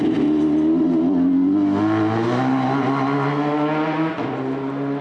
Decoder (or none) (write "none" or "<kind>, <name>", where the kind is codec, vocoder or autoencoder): none